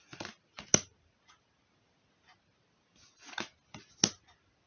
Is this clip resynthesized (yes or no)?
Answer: no